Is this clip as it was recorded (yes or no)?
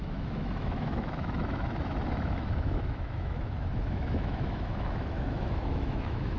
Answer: no